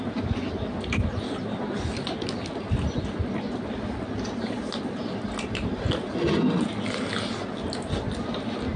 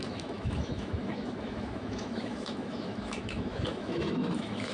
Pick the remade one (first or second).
second